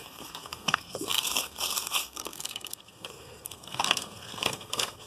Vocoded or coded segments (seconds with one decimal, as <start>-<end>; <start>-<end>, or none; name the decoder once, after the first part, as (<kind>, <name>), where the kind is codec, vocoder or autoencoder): 0.0-5.1 (codec, SNAC)